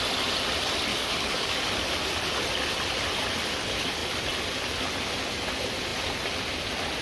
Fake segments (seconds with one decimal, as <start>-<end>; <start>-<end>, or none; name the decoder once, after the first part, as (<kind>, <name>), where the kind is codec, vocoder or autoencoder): 0.9-1.7 (codec, DAC)